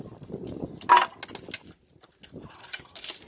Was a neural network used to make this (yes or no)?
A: no